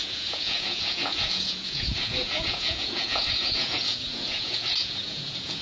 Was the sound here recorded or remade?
remade